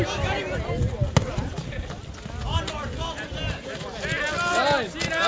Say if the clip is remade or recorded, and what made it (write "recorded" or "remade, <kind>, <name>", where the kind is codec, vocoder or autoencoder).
recorded